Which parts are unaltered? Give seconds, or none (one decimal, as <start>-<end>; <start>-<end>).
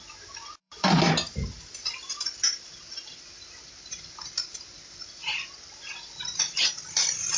0.0-0.6; 1.1-5.2; 6.7-7.4